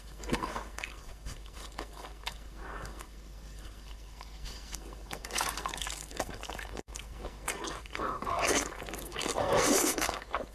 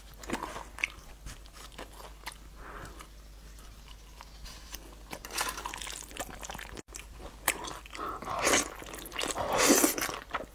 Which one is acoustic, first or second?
second